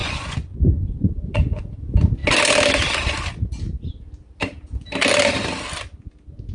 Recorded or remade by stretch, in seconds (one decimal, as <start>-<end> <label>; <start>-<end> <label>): 0.0-1.6 remade; 1.6-6.5 recorded